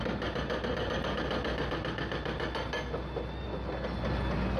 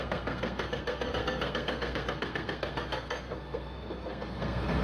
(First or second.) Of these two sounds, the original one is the first